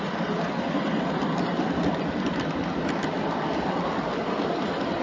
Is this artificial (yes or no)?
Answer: no